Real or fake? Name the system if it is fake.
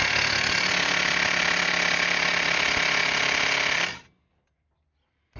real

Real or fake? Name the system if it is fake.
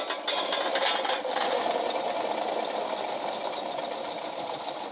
real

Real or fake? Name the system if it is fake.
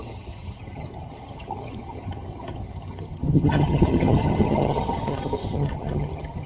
fake, vocoder, HiFi-GAN